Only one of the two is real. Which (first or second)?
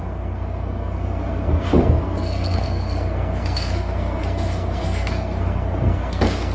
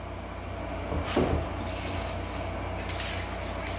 second